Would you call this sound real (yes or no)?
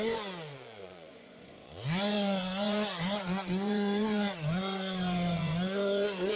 no